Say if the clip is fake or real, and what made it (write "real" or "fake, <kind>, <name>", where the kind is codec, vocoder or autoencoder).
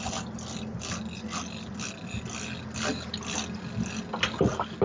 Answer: real